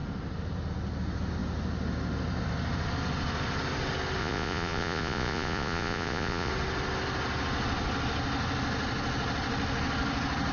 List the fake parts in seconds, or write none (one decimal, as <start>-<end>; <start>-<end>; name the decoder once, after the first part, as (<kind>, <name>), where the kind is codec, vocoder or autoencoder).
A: 4.2-6.5 (vocoder, Vocos)